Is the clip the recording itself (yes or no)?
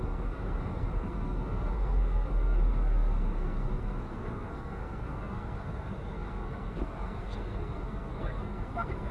no